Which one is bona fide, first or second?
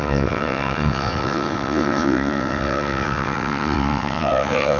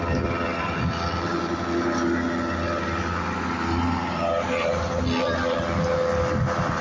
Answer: second